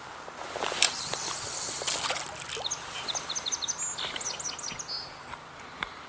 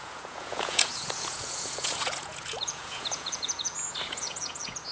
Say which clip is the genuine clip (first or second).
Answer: first